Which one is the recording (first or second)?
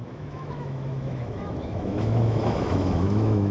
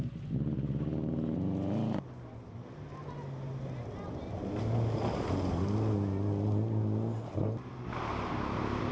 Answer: second